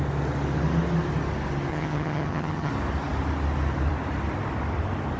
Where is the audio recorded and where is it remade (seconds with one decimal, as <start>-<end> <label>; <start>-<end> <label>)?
0.0-1.7 recorded; 1.7-2.7 remade; 2.7-5.2 recorded